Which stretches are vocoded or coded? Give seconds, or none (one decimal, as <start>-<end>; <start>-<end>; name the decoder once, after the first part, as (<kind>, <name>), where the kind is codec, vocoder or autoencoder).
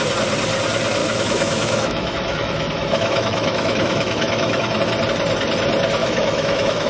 1.0-4.8 (autoencoder, DAC-VAE); 6.0-6.9